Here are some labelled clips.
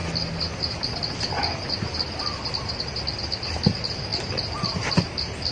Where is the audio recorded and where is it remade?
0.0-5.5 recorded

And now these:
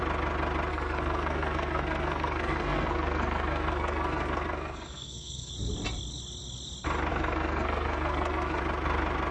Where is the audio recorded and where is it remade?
0.0-0.7 recorded; 0.7-5.5 remade; 5.5-7.1 recorded; 7.1-8.6 remade; 8.6-9.3 recorded

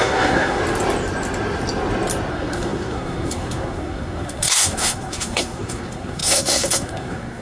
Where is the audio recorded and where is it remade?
0.0-0.6 remade; 0.6-2.3 recorded; 2.3-7.4 remade

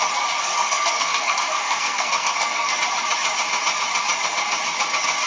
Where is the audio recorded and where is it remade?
0.0-0.4 recorded; 0.4-2.7 remade; 2.7-5.3 recorded

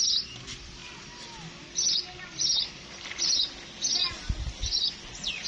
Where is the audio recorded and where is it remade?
0.0-5.5 recorded

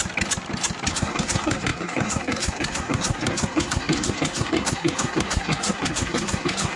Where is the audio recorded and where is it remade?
0.0-0.9 recorded; 0.9-6.8 remade

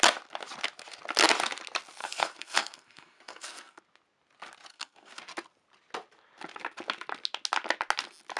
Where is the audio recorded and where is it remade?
0.0-2.0 recorded; 2.0-3.8 remade; 3.8-4.7 recorded; 4.7-5.2 remade; 5.2-8.4 recorded

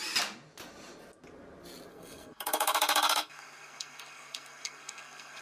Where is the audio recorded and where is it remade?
0.0-1.9 recorded; 1.9-5.4 remade